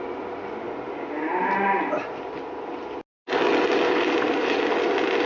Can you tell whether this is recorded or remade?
recorded